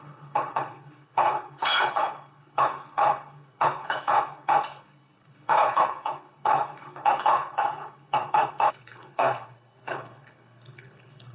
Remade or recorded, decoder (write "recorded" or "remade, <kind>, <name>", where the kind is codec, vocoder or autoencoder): remade, codec, HILCodec